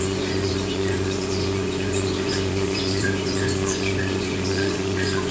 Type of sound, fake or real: fake